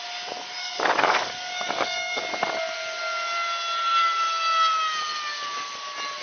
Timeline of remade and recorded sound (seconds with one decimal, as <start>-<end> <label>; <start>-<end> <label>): 0.0-0.6 recorded; 0.6-2.2 remade; 2.2-6.2 recorded